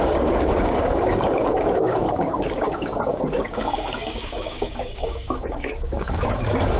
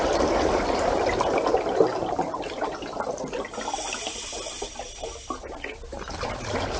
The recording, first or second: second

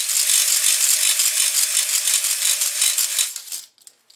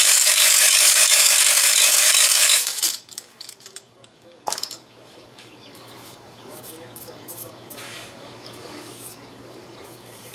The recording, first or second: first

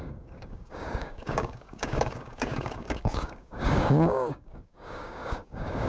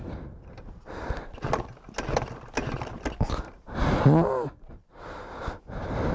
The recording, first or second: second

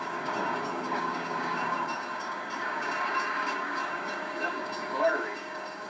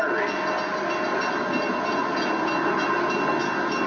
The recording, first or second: second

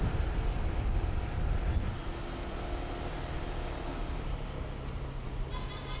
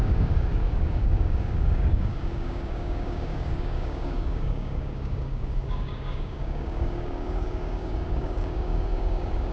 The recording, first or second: first